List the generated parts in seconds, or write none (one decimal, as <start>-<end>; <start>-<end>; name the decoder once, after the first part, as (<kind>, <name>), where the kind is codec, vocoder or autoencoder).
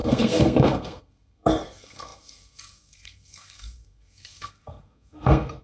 0.0-5.6 (codec, SNAC)